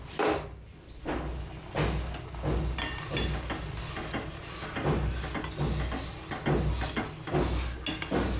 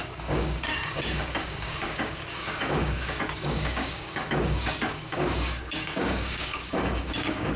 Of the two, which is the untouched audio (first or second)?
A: first